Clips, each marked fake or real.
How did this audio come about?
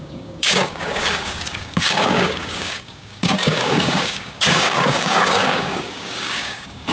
fake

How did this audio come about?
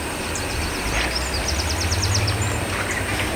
real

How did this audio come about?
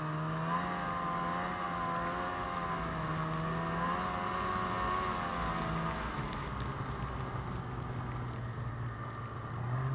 real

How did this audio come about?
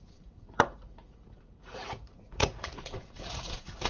fake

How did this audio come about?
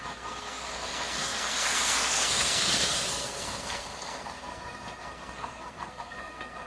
fake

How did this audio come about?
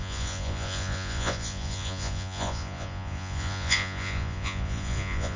fake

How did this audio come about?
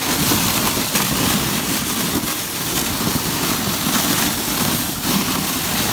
real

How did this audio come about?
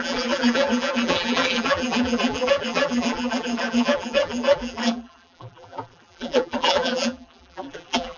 fake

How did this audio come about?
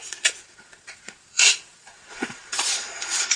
fake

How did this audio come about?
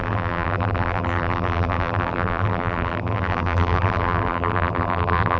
fake